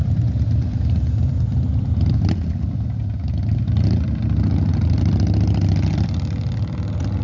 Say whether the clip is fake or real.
real